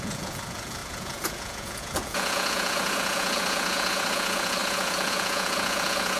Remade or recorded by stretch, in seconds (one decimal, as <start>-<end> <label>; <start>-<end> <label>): 0.0-6.2 remade